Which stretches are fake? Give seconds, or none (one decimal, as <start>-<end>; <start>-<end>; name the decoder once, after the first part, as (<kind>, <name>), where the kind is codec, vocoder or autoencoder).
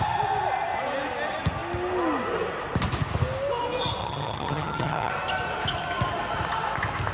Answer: 4.0-5.1 (vocoder, HiFi-GAN)